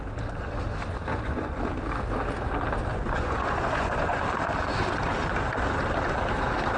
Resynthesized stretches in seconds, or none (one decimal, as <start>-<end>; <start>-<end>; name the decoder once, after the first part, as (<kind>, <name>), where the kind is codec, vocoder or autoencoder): 1.1-1.6 (vocoder, Vocos); 2.9-4.2